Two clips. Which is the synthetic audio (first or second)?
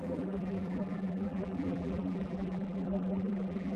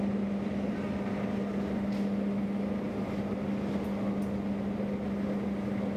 first